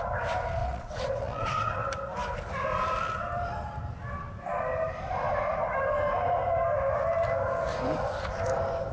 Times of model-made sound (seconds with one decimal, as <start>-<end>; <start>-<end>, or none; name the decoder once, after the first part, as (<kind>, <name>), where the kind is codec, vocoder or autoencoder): 0.6-1.8 (vocoder, WaveNeXt)